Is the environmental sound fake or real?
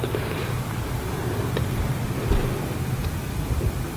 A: real